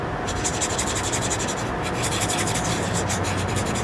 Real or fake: real